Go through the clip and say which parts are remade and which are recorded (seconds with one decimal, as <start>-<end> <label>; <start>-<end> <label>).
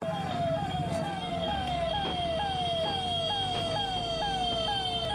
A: 0.0-1.9 remade; 1.9-5.1 recorded